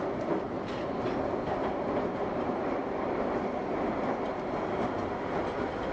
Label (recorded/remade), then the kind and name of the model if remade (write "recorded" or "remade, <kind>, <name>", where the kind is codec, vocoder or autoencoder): recorded